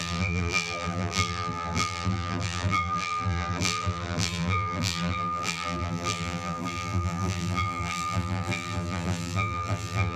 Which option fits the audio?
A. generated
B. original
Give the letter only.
A